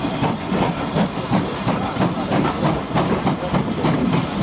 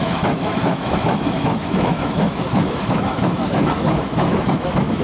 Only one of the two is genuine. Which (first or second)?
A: first